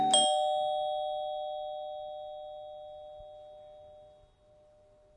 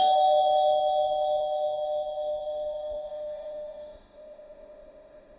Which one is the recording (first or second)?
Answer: first